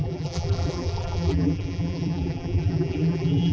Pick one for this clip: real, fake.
fake